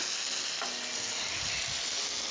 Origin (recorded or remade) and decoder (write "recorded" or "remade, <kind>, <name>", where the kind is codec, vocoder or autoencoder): recorded